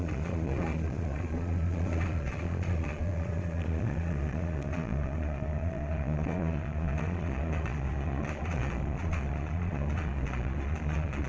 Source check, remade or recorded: remade